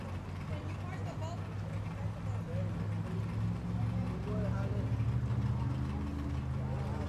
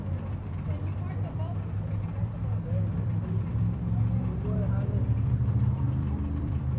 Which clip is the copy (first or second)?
second